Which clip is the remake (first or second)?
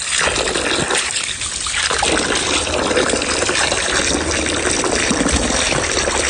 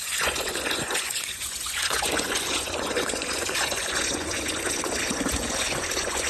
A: second